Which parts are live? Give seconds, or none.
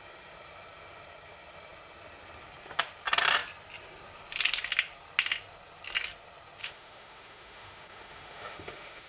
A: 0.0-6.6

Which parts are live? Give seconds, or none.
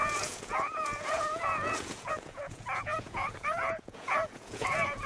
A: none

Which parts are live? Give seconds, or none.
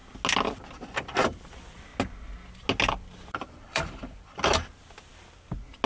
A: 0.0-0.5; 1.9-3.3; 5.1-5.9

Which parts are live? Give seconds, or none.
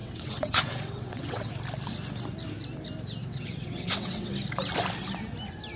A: 1.5-3.2; 4.3-5.8